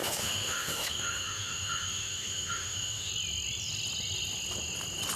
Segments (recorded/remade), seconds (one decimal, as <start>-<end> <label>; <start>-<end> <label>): 0.0-3.1 remade; 3.1-5.2 recorded